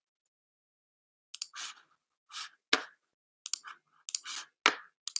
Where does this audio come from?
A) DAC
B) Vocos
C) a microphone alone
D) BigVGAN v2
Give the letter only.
C